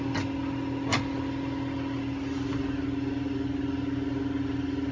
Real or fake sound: real